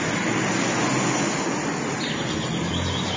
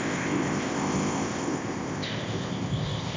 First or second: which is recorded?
first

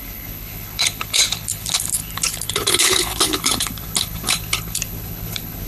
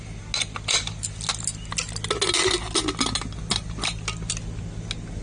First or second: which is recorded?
second